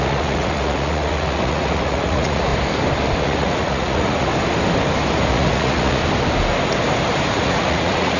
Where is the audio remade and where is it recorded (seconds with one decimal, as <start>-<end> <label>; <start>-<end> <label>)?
0.0-2.5 remade; 2.5-3.2 recorded; 3.2-4.3 remade; 4.3-5.3 recorded; 5.3-6.0 remade; 6.0-7.3 recorded; 7.3-8.2 remade